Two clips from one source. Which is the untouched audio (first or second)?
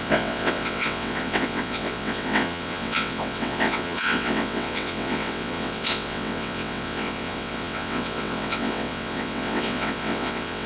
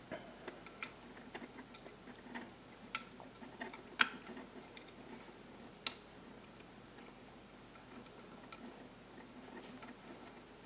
second